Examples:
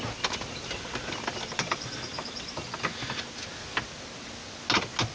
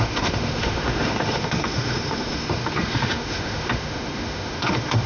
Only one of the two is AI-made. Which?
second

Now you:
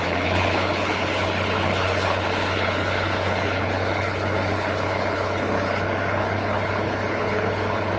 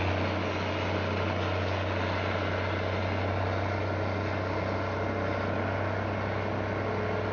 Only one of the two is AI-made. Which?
first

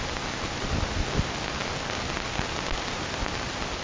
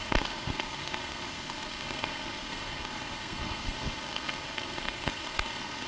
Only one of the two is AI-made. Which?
second